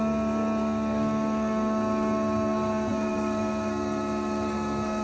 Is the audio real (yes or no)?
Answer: no